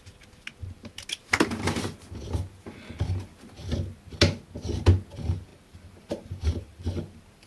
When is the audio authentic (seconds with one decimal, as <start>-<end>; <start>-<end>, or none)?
0.0-5.5; 6.8-7.5